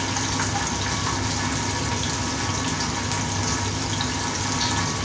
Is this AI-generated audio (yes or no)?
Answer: no